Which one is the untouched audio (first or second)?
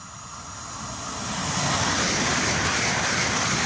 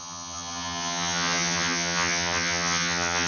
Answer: first